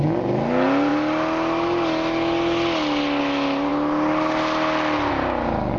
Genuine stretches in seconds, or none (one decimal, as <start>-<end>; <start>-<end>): 0.0-5.8